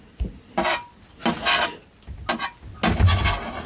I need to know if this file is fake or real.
real